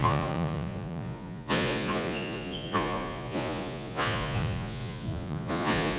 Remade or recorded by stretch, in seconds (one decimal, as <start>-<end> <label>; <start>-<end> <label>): 0.0-6.0 remade